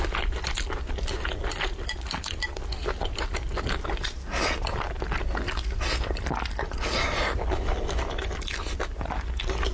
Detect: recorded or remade recorded